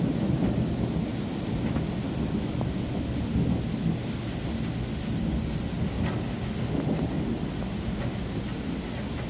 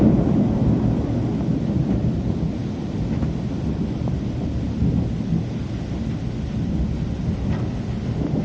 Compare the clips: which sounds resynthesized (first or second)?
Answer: second